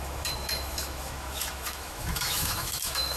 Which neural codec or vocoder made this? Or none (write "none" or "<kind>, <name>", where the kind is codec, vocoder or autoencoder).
autoencoder, DAC-VAE